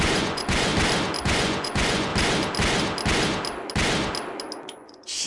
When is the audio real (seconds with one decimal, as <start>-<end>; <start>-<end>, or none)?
0.7-1.2; 2.1-4.6